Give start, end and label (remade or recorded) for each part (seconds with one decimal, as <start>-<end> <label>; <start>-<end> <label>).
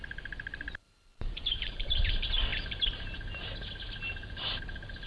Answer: 0.0-1.1 recorded; 1.1-2.0 remade; 2.0-5.1 recorded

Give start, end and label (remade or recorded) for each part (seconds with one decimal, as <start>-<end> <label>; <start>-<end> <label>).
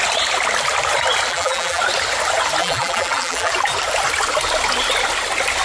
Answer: 0.0-1.3 recorded; 1.3-1.8 remade; 1.8-2.6 recorded; 2.6-3.5 remade; 3.5-5.6 recorded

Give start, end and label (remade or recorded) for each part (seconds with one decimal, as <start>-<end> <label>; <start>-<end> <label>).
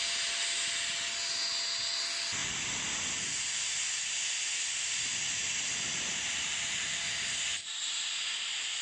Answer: 0.0-8.8 recorded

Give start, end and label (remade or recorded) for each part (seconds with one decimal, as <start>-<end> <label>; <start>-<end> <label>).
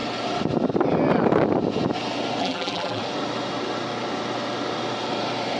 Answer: 0.0-2.4 recorded; 2.4-3.0 remade; 3.0-5.6 recorded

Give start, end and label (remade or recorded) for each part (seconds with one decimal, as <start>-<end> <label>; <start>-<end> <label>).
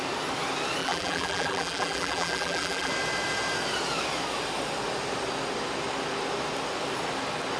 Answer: 0.0-0.8 recorded; 0.8-2.9 remade; 2.9-7.6 recorded